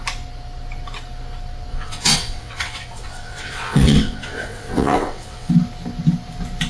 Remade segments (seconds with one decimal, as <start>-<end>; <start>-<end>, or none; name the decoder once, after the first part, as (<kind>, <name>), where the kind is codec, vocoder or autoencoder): 1.7-5.5 (vocoder, WaveNeXt)